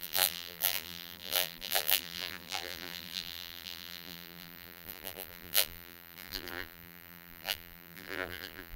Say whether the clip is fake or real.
fake